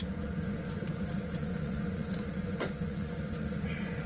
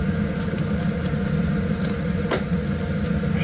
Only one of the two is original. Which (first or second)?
second